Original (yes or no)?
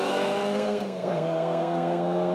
no